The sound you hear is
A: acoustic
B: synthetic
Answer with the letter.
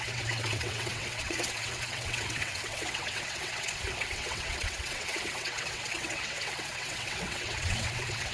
B